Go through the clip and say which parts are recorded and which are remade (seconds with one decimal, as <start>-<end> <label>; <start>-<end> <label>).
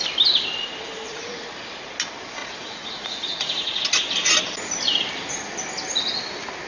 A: 0.0-2.4 recorded; 2.4-3.8 remade; 3.8-6.7 recorded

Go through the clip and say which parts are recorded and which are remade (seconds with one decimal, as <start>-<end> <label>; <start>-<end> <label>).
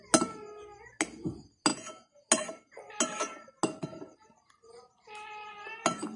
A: 0.0-1.7 recorded; 1.7-2.3 remade; 2.3-6.2 recorded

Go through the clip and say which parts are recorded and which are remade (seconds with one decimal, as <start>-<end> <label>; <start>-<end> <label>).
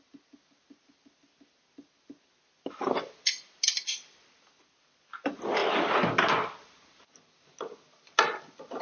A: 0.0-8.8 recorded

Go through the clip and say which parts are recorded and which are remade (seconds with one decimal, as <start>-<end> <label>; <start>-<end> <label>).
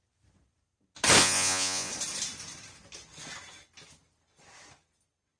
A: 0.0-1.2 recorded; 1.2-1.9 remade; 1.9-5.4 recorded